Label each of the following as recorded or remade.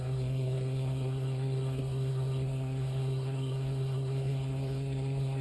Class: remade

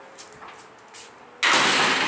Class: recorded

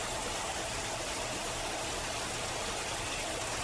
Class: recorded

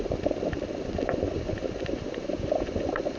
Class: remade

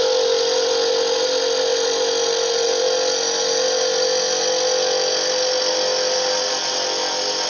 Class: recorded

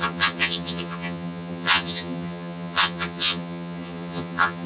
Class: remade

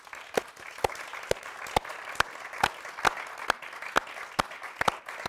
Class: recorded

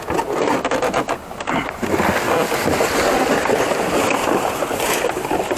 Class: recorded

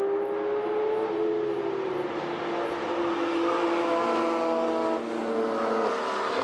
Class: recorded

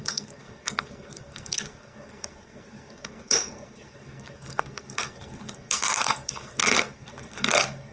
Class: remade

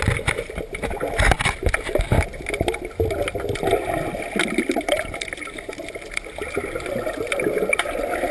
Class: recorded